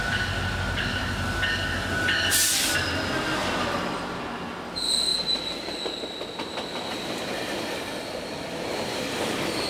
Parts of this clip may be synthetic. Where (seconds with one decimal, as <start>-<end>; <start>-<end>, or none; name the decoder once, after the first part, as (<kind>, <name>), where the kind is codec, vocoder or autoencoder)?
3.4-4.2 (vocoder, BigVGAN v2)